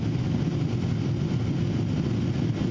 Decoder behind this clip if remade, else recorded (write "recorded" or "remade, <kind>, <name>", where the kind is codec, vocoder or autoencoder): recorded